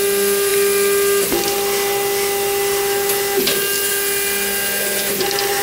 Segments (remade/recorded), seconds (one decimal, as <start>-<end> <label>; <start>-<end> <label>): 0.0-5.6 recorded